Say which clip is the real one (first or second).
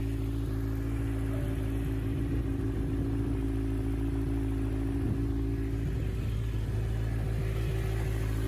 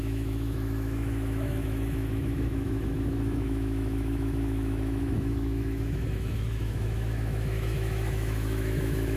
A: first